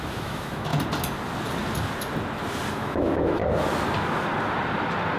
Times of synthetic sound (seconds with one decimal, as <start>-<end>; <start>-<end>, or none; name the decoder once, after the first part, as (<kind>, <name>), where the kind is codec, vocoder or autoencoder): 0.0-0.7 (autoencoder, DAC-VAE); 2.7-3.4

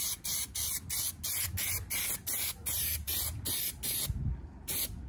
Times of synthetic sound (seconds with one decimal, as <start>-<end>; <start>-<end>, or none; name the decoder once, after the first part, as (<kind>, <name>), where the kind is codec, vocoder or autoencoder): 2.6-3.2 (vocoder, BigVGAN v2)